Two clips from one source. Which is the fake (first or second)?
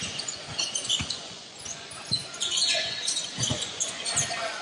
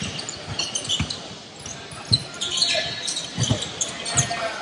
first